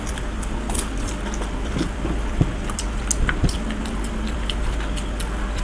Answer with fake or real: real